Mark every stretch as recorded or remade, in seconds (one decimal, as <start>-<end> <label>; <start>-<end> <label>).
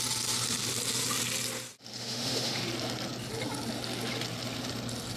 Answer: 0.0-2.0 recorded; 2.0-2.6 remade; 2.6-5.2 recorded